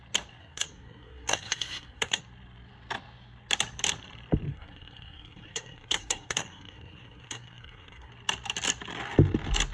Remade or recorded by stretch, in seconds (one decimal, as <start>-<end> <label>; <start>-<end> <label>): 0.0-0.4 recorded; 0.4-2.2 remade; 2.2-4.5 recorded; 4.5-8.1 remade; 8.1-9.7 recorded